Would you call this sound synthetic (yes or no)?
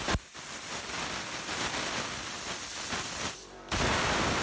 yes